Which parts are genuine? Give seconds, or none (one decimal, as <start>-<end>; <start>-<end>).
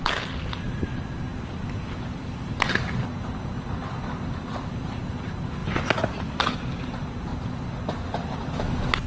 0.0-9.1